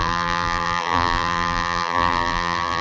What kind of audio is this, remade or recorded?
remade